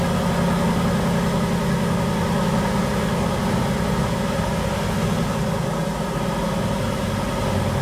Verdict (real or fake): real